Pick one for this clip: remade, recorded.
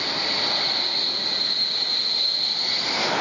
recorded